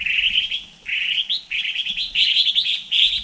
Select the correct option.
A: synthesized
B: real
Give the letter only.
B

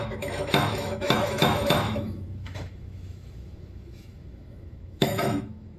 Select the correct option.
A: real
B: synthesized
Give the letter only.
B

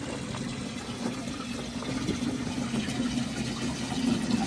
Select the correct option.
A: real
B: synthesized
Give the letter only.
A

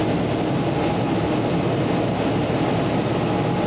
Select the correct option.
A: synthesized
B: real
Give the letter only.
B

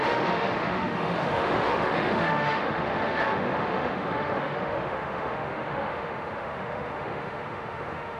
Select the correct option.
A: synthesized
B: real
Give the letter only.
A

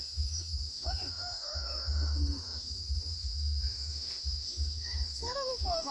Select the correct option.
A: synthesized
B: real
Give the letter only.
A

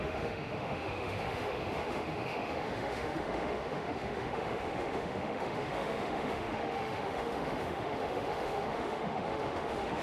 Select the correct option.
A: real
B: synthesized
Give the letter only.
B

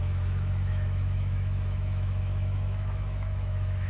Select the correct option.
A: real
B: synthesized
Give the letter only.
B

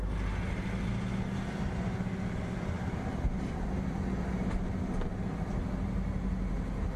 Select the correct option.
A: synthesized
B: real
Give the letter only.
B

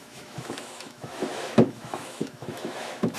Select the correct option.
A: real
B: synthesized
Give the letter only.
B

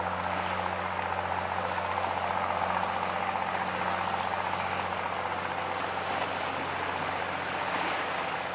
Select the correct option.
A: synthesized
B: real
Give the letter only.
B